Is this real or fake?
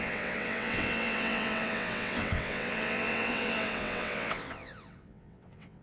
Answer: fake